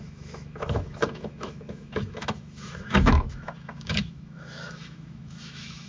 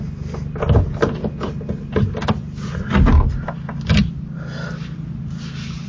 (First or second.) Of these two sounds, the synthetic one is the first